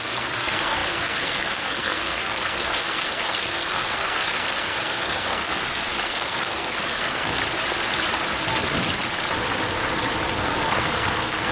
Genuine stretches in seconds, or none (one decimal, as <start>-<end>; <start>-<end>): 7.4-10.3